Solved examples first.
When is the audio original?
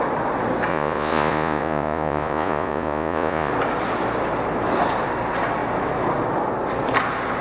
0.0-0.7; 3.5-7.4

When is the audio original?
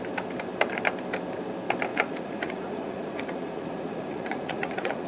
0.0-1.9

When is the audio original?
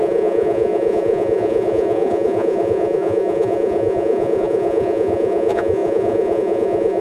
none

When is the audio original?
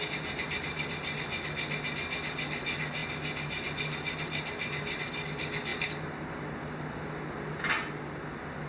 0.0-8.7